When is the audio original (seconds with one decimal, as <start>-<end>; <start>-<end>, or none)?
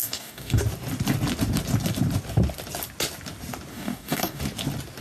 0.6-3.7; 4.4-5.0